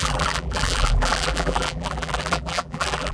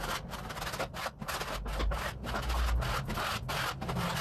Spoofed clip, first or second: first